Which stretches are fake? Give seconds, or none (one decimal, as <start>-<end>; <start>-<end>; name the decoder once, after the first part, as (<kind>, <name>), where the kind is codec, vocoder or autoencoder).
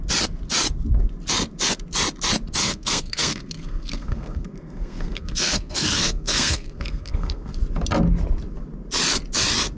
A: 2.6-7.6 (codec, SNAC)